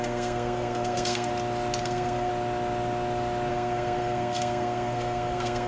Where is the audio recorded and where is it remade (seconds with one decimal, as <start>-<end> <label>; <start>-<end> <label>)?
0.0-1.3 remade; 1.3-1.8 recorded; 1.8-2.3 remade; 2.3-3.5 recorded; 3.5-5.7 remade

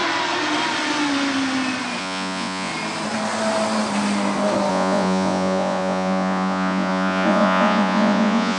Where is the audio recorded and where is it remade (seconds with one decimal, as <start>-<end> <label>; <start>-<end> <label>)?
0.0-2.0 recorded; 2.0-2.7 remade; 2.7-4.7 recorded; 4.7-8.6 remade